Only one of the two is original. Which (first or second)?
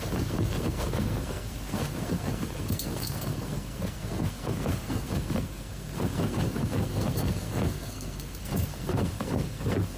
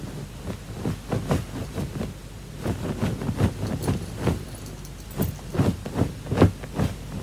second